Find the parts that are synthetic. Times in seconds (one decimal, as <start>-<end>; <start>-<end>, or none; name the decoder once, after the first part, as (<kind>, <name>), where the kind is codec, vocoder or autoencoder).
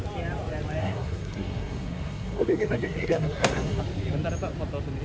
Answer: 0.8-3.8 (codec, SNAC)